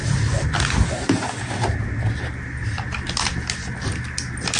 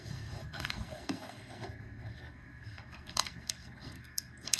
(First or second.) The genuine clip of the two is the first